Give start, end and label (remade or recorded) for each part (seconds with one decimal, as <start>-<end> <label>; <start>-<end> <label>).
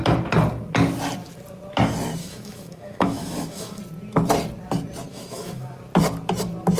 0.0-2.2 recorded; 2.2-3.8 remade; 3.8-5.1 recorded; 5.1-5.8 remade; 5.8-6.8 recorded